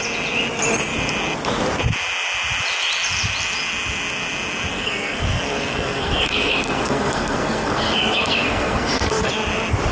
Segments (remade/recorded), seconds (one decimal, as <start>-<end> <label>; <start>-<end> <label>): 0.0-4.7 recorded; 4.7-9.3 remade; 9.3-9.9 recorded